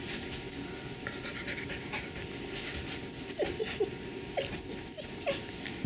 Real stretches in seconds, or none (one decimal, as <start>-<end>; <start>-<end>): 0.0-5.9